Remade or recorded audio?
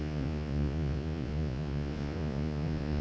remade